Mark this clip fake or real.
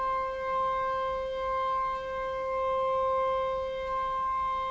real